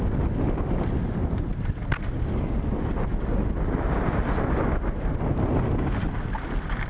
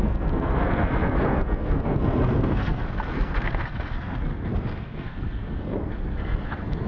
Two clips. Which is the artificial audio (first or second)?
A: second